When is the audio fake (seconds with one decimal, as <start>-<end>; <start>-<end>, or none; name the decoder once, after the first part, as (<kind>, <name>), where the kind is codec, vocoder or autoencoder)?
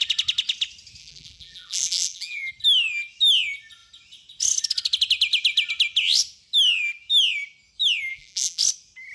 1.0-2.5 (vocoder, BigVGAN v2); 8.1-8.6